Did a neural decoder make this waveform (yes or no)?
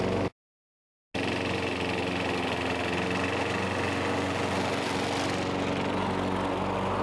no